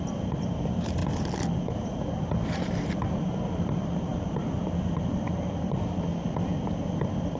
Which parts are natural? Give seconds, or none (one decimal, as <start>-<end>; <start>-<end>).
1.0-1.5; 6.1-7.4